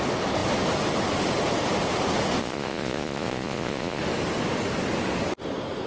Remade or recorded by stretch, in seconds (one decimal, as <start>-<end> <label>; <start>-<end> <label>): 0.0-2.4 recorded; 2.4-4.0 remade; 4.0-5.9 recorded